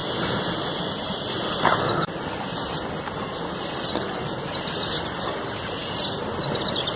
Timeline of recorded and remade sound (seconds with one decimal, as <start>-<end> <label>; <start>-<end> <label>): 0.0-7.0 recorded